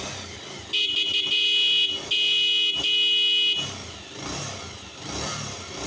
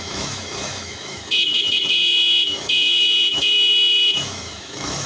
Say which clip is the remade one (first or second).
second